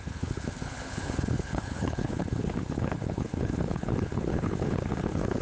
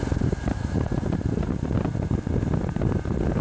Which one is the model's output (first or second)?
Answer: first